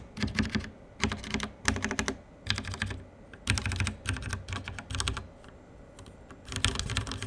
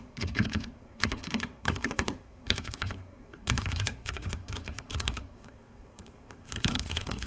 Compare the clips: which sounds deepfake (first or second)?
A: second